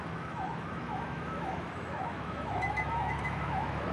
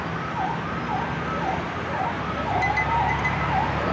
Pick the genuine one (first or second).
second